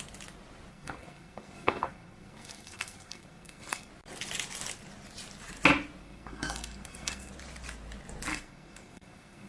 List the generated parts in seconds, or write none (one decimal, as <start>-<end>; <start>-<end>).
0.7-3.9; 6.0-7.3; 8.3-9.5